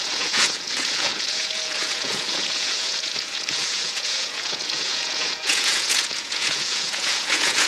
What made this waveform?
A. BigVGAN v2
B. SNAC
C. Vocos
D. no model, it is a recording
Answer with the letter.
C